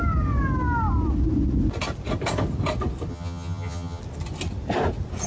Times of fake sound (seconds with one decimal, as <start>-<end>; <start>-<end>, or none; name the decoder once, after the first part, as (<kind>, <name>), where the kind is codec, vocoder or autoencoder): 3.1-4.0 (vocoder, HiFi-GAN)